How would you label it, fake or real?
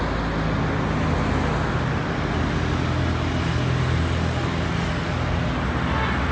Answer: real